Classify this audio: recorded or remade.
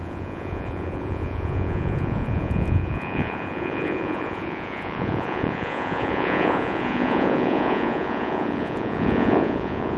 remade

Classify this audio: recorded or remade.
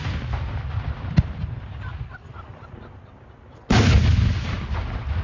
recorded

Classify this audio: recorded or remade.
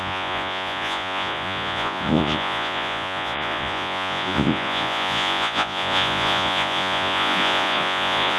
remade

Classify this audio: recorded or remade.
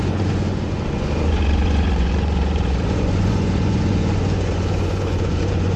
remade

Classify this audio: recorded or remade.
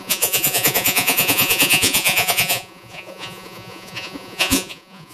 remade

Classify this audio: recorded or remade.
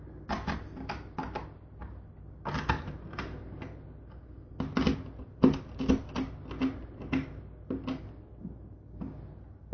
recorded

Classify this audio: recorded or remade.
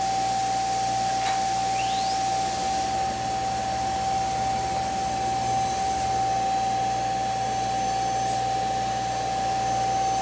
recorded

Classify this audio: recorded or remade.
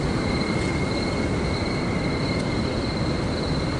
recorded